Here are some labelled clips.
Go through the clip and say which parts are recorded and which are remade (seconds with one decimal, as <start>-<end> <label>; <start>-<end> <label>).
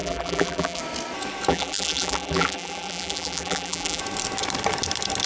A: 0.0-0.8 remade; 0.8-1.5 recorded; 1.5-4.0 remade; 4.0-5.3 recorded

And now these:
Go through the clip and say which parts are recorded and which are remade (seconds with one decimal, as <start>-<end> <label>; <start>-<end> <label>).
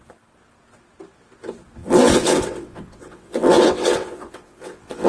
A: 0.0-1.8 recorded; 1.8-5.1 remade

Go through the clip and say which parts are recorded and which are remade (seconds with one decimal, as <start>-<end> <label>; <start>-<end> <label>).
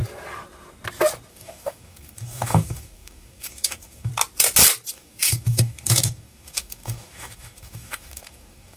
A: 0.0-1.3 recorded; 1.3-4.1 remade; 4.1-4.9 recorded; 4.9-8.8 remade